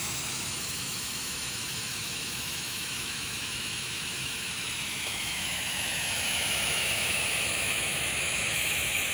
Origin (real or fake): fake